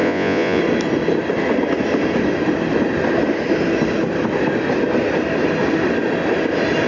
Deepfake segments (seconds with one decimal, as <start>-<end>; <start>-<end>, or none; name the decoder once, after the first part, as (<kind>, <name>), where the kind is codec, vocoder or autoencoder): 0.0-0.6 (vocoder, Vocos)